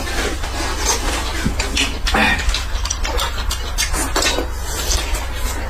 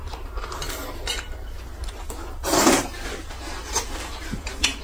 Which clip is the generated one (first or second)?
second